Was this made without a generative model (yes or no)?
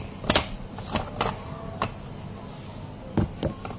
yes